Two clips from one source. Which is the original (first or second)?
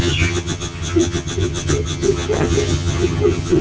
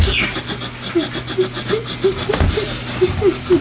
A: second